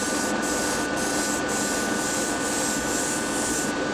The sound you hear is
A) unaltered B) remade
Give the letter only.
A